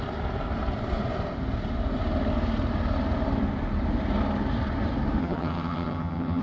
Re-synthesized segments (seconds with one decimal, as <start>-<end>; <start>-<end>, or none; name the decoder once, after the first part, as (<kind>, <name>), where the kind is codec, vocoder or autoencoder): 5.2-6.4 (vocoder, HiFi-GAN)